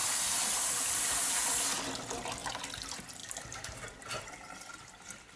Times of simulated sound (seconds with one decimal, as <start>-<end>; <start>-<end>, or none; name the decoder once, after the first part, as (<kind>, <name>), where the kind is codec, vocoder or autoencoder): 0.0-1.6 (vocoder, BigVGAN v2); 3.2-5.4